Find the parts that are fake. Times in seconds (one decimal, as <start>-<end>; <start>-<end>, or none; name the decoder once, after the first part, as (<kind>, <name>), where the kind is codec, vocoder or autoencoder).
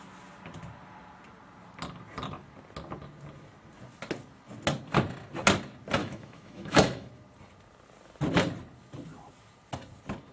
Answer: 6.0-7.1 (autoencoder, DAC-VAE)